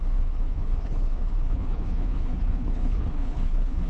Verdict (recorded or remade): remade